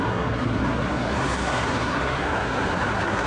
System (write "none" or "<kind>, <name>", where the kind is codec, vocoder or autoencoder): codec, SNAC